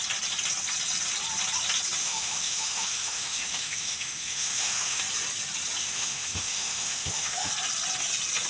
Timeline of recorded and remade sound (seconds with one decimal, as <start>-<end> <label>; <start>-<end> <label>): 0.0-2.0 recorded; 2.0-5.0 remade; 5.0-5.8 recorded; 5.8-7.5 remade; 7.5-8.5 recorded